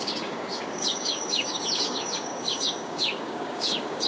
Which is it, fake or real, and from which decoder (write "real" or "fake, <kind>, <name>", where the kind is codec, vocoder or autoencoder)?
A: fake, codec, DAC